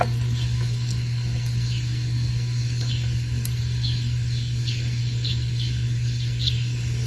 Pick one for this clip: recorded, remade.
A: remade